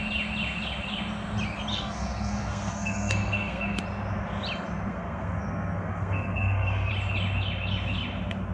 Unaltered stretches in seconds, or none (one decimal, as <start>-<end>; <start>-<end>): 0.0-1.7; 3.8-4.9; 6.9-8.5